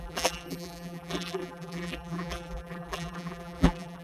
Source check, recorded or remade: remade